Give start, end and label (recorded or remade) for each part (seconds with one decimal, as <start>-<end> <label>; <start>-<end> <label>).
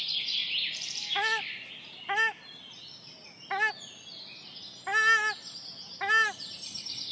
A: 0.0-7.1 recorded